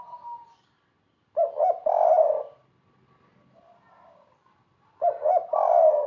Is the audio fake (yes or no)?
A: no